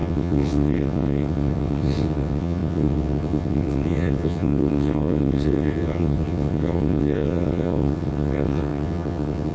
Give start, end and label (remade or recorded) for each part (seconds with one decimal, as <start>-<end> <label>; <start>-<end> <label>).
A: 0.0-9.5 remade

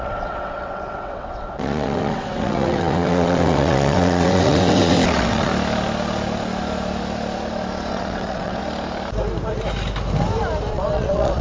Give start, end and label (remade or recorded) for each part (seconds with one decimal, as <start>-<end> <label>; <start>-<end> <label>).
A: 0.0-5.5 remade; 5.5-7.9 recorded; 7.9-8.6 remade; 8.6-10.7 recorded; 10.7-11.4 remade

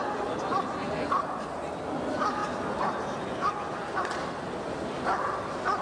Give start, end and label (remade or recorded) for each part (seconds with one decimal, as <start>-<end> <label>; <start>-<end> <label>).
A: 0.0-5.8 recorded

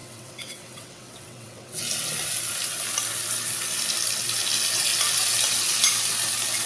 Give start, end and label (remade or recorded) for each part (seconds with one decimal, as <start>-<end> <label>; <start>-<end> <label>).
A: 0.0-1.8 remade; 1.8-6.7 recorded

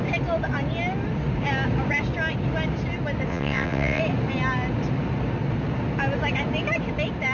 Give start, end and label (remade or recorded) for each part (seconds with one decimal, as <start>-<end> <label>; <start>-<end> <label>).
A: 0.0-3.3 recorded; 3.3-4.0 remade; 4.0-7.3 recorded

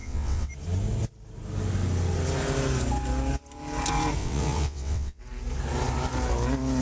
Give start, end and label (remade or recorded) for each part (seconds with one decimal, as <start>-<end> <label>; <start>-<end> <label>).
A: 0.0-0.5 remade; 0.5-4.2 recorded; 4.2-5.2 remade; 5.2-6.8 recorded

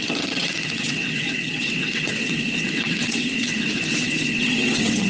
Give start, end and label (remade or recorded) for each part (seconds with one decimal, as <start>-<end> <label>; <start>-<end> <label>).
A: 0.0-5.1 remade

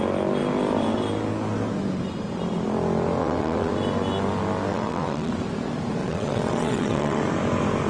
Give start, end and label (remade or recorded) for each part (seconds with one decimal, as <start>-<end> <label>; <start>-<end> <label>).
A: 0.0-3.2 recorded; 3.2-3.7 remade; 3.7-4.7 recorded; 4.7-5.3 remade; 5.3-6.0 recorded; 6.0-7.2 remade; 7.2-7.9 recorded